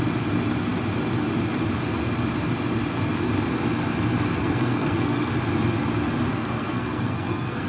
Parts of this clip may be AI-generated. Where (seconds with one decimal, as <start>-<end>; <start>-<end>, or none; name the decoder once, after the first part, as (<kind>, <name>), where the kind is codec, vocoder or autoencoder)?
4.4-5.3 (codec, SNAC); 6.3-7.7